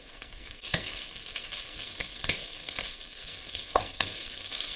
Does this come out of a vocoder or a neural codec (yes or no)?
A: yes